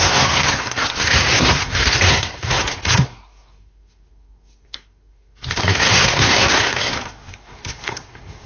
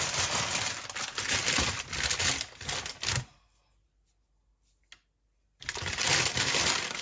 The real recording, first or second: second